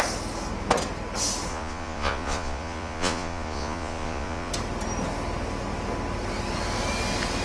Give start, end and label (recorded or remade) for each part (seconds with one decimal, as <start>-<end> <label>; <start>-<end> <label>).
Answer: 0.0-1.5 recorded; 1.5-4.5 remade; 4.5-7.4 recorded